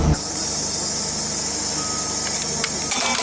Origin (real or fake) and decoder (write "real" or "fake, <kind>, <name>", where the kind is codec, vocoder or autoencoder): real